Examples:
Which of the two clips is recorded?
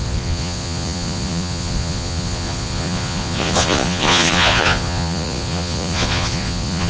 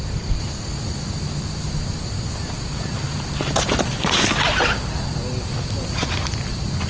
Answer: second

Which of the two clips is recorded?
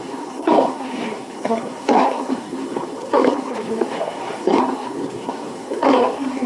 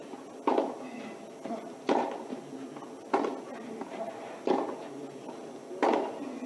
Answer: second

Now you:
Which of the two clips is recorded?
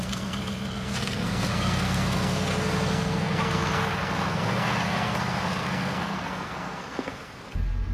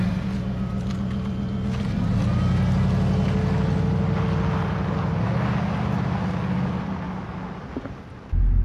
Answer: second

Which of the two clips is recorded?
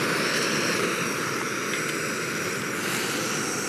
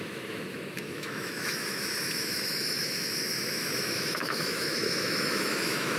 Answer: first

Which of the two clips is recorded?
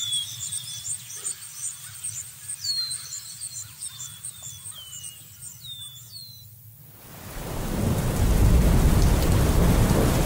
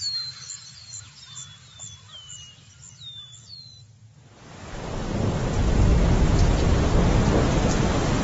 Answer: second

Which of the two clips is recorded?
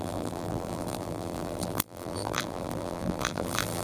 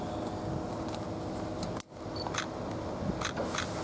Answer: second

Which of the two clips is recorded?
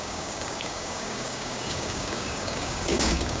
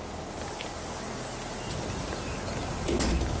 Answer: second